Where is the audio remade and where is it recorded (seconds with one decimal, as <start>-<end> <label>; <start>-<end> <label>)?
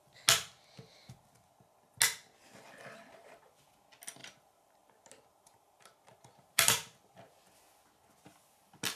0.0-4.2 recorded; 4.2-7.0 remade; 7.0-9.0 recorded